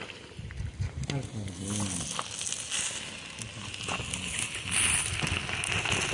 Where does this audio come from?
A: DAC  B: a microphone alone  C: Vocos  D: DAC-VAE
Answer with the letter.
B